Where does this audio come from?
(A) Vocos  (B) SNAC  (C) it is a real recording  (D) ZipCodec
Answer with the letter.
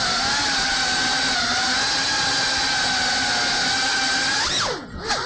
C